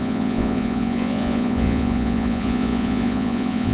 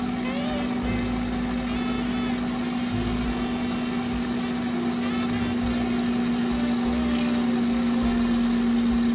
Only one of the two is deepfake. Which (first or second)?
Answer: first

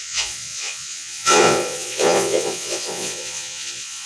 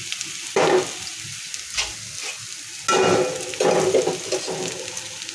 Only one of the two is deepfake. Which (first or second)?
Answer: first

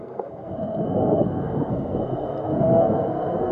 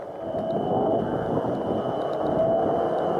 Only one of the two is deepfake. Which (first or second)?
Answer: first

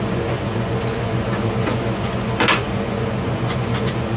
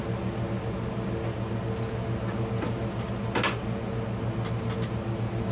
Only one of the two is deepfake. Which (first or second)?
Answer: first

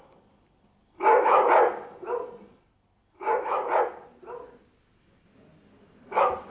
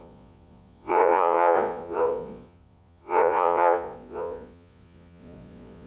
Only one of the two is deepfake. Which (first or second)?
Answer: second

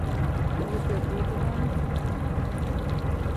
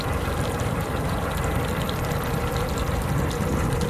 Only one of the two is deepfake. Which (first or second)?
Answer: second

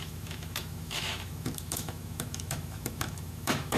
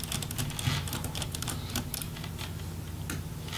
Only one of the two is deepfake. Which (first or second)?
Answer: first